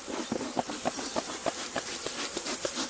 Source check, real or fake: real